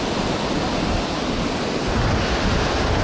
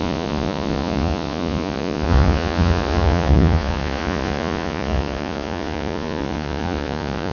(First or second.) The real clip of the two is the first